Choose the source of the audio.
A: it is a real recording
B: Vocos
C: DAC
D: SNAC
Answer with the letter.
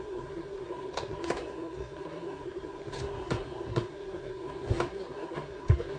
D